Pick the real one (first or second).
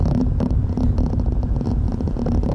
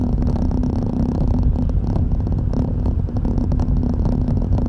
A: second